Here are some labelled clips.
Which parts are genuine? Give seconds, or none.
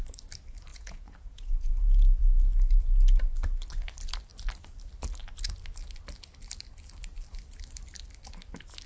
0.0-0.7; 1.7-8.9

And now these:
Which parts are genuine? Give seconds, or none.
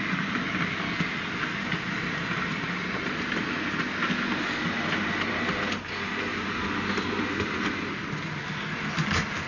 0.0-9.5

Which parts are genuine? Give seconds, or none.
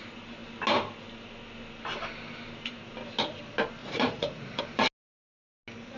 0.0-3.8; 4.6-6.0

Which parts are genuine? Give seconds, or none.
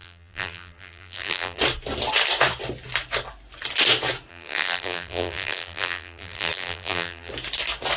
1.6-4.3; 7.3-8.0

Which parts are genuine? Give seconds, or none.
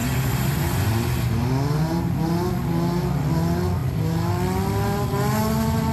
0.0-5.9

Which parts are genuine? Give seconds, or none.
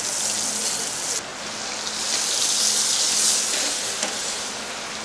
0.0-5.0